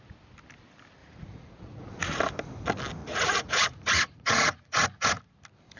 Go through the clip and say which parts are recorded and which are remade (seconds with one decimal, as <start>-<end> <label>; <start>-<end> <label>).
0.0-1.0 recorded; 1.0-2.1 remade; 2.1-3.0 recorded; 3.0-5.2 remade; 5.2-5.8 recorded